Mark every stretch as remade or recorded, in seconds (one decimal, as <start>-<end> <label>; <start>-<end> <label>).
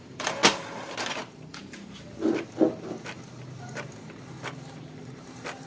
0.0-0.4 remade; 0.4-1.1 recorded; 1.1-1.6 remade; 1.6-5.0 recorded; 5.0-5.7 remade